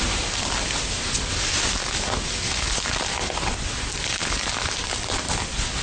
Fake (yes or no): no